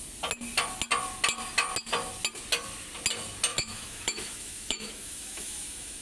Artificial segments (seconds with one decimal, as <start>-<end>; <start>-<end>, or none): 3.5-6.0